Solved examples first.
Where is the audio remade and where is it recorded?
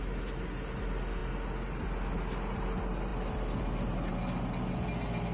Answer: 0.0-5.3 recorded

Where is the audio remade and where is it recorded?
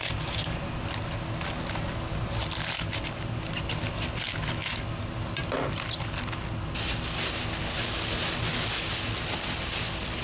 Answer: 0.0-10.2 recorded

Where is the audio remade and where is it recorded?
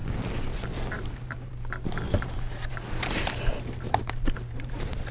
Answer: 0.0-0.9 recorded; 0.9-1.5 remade; 1.5-2.7 recorded; 2.7-5.1 remade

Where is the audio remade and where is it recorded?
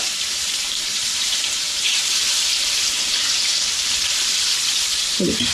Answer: 0.0-3.5 remade; 3.5-4.2 recorded; 4.2-5.5 remade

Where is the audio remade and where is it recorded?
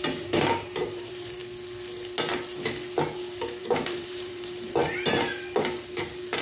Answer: 0.0-1.4 remade; 1.4-3.6 recorded; 3.6-4.8 remade; 4.8-6.4 recorded